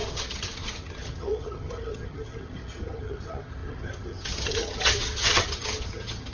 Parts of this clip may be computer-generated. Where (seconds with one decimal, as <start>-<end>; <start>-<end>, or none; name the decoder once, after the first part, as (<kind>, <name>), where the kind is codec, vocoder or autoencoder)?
0.0-6.3 (vocoder, HiFi-GAN)